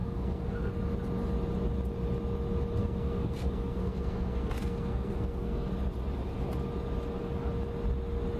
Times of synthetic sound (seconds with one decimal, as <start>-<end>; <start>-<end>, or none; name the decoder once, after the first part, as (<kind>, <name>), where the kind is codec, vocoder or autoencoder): 0.0-0.7 (codec, SNAC); 2.8-5.7